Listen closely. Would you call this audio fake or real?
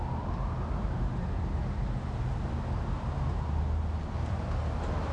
real